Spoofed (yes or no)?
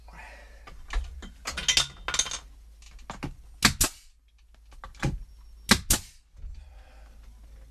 no